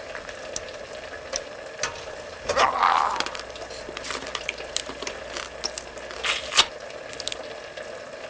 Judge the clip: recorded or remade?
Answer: recorded